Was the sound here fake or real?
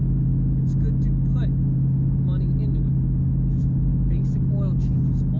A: real